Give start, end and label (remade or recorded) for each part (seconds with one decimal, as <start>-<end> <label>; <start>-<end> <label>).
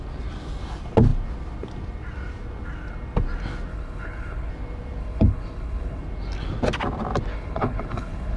0.0-3.7 recorded; 3.7-4.5 remade; 4.5-5.0 recorded; 5.0-6.0 remade; 6.0-7.3 recorded; 7.3-8.4 remade